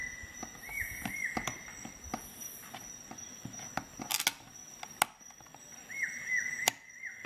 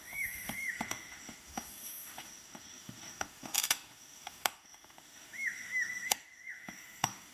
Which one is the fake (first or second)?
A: second